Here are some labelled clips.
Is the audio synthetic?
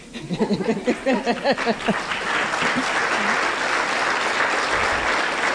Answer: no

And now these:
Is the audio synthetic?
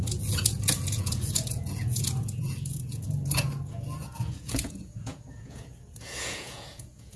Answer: yes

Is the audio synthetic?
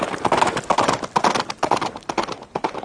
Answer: no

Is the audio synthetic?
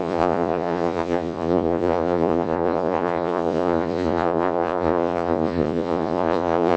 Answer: yes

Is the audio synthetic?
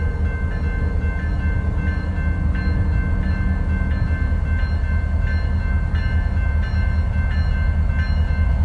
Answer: no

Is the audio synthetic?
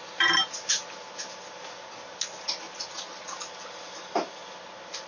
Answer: no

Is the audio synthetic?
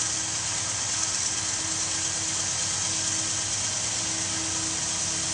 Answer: no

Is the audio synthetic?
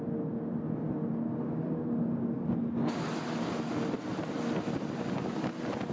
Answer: no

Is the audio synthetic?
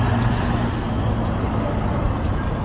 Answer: no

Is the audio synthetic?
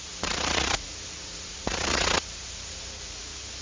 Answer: yes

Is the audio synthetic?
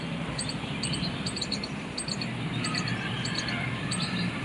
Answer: no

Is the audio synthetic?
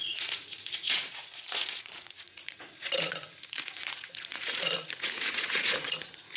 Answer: yes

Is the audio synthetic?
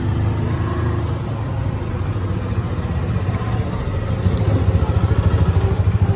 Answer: no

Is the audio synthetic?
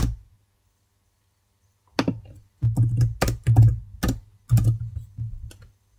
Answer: no